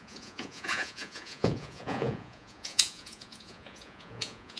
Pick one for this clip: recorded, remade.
remade